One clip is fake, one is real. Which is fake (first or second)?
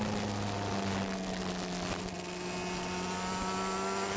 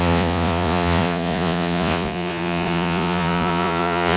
second